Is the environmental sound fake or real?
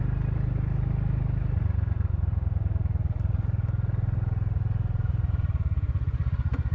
real